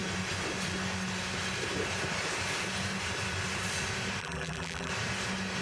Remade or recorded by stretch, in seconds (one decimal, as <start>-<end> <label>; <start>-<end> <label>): 0.0-4.2 recorded; 4.2-4.9 remade; 4.9-5.6 recorded